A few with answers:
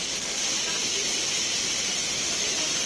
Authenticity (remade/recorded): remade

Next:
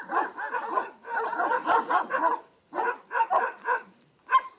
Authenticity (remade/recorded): recorded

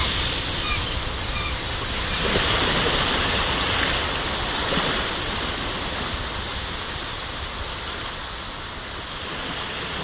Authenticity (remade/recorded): recorded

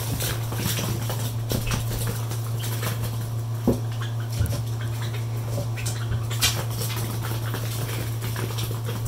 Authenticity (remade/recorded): recorded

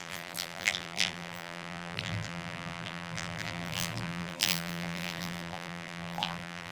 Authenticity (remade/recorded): remade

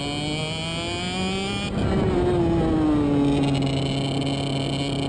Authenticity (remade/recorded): recorded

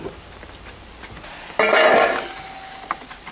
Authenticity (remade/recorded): recorded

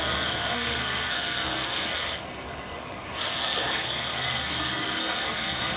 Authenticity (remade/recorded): remade